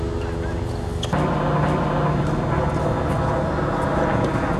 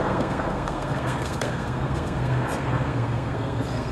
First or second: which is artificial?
second